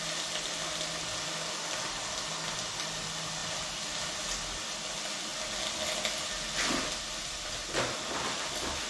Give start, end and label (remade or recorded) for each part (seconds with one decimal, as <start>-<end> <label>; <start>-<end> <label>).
0.0-8.9 recorded